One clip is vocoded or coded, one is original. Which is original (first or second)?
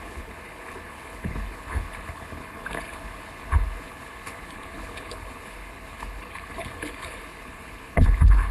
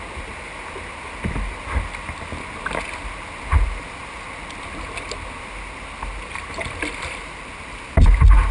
second